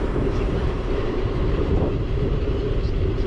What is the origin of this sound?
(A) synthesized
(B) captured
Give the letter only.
A